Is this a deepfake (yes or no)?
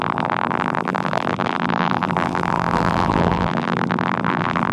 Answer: yes